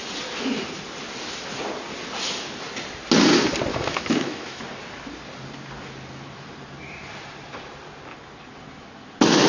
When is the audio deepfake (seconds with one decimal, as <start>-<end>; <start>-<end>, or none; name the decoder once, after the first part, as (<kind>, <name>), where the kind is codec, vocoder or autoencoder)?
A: 3.7-4.6 (autoencoder, DAC-VAE)